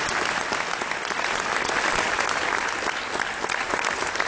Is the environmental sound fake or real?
real